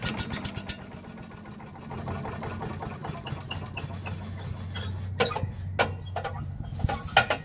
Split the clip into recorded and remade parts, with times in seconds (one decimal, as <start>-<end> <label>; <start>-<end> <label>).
0.0-7.4 recorded